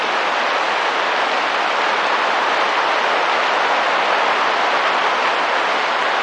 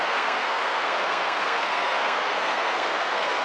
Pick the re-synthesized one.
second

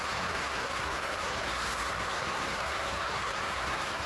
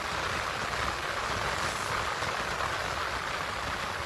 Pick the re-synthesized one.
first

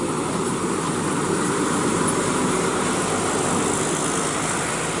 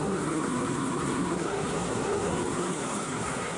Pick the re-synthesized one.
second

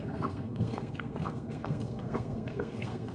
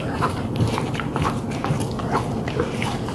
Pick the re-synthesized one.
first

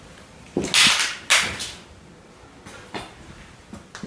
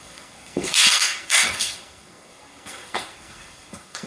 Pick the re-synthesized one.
second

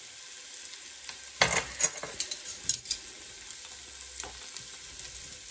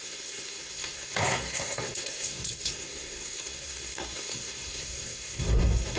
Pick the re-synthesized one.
second